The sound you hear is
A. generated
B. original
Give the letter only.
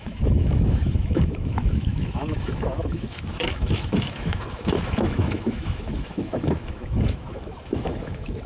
A